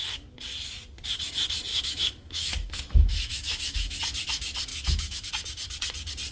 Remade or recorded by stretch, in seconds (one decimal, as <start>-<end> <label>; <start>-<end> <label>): 0.0-1.7 recorded; 1.7-4.0 remade; 4.0-4.7 recorded; 4.7-5.3 remade; 5.3-6.3 recorded